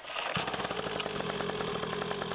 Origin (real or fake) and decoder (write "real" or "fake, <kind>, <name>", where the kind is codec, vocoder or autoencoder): real